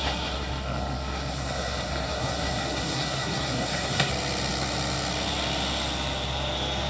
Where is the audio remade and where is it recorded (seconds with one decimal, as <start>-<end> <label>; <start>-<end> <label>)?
0.0-4.1 remade; 4.1-6.9 recorded

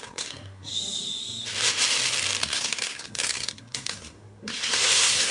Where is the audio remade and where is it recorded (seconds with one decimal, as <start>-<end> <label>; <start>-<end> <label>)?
0.0-0.7 remade; 0.7-2.4 recorded; 2.4-5.3 remade

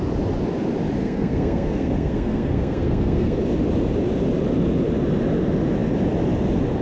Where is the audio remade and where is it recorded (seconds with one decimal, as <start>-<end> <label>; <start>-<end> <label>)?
0.0-1.0 recorded; 1.0-3.4 remade; 3.4-6.8 recorded

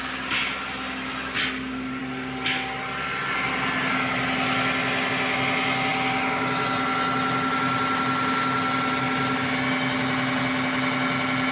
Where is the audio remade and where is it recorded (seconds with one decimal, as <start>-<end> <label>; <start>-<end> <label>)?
0.0-11.5 recorded

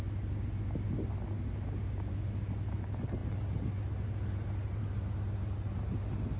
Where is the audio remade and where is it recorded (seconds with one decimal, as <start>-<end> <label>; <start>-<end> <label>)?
0.0-6.4 recorded